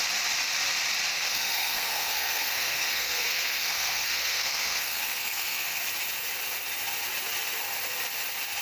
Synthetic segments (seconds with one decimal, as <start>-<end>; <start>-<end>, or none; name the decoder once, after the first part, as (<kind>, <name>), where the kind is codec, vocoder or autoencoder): 1.1-5.8 (codec, SNAC)